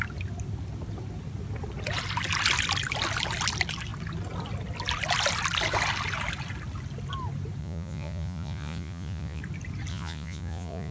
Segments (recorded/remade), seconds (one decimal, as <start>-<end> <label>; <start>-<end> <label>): 0.0-7.6 recorded; 7.6-9.4 remade; 9.4-9.9 recorded; 9.9-10.9 remade